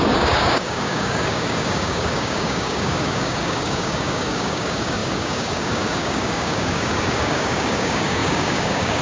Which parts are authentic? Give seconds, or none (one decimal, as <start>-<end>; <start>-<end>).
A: none